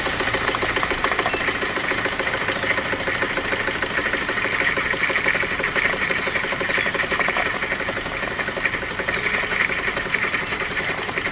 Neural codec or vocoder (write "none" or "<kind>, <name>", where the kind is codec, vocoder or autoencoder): none